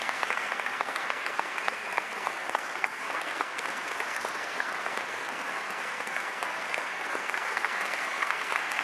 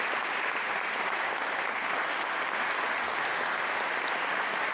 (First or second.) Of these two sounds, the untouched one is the second